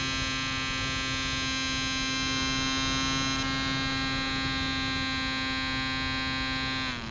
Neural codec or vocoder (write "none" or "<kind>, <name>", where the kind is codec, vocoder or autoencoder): none